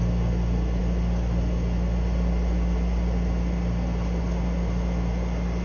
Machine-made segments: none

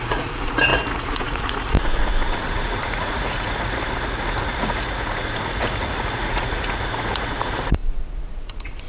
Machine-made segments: 0.0-8.9 (vocoder, Vocos)

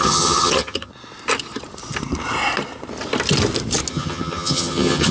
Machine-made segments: 0.0-0.9 (vocoder, HiFi-GAN); 3.9-5.1

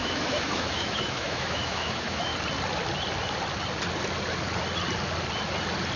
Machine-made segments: 0.0-2.3 (autoencoder, DAC-VAE)

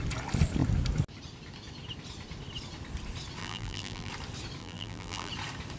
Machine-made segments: 3.4-4.1 (vocoder, BigVGAN v2); 4.6-5.3

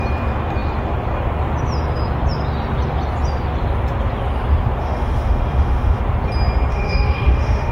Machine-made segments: 4.8-6.0 (autoencoder, DAC-VAE); 6.7-7.7